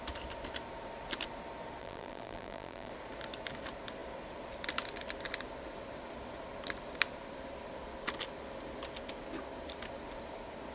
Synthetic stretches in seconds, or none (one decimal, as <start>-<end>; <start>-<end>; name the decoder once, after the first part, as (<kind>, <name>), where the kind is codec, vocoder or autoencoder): 1.8-2.9 (vocoder, BigVGAN v2)